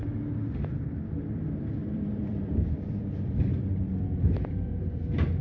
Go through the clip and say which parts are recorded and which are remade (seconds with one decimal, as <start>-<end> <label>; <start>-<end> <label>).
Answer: 0.0-1.8 recorded; 1.8-5.0 remade; 5.0-5.4 recorded